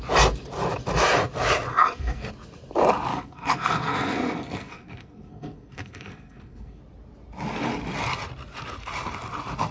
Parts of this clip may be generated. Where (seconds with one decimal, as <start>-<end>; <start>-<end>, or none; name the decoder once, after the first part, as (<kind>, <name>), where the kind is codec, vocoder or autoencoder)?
1.7-2.3 (codec, SNAC); 3.1-6.8